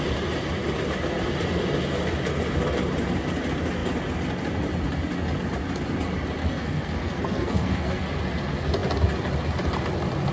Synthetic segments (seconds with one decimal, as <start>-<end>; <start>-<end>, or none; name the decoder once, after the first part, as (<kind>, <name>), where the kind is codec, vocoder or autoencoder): 6.4-8.1 (codec, SNAC)